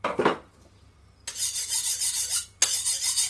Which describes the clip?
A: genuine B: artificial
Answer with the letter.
A